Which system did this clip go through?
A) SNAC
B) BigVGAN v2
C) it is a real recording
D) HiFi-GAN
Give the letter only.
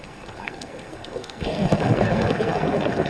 A